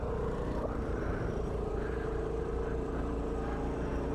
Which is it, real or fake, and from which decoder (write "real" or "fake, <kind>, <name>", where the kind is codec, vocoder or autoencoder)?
fake, vocoder, BigVGAN v2